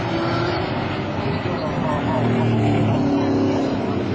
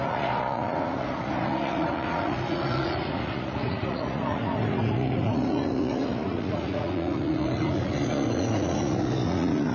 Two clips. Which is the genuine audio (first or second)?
first